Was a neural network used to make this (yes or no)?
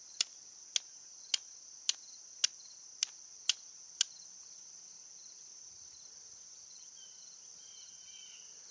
no